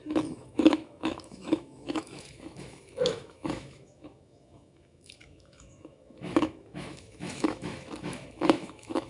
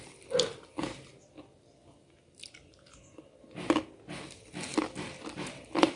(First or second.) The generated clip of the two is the first